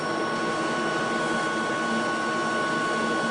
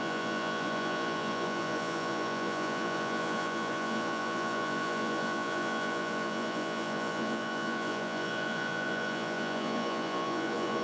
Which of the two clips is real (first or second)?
first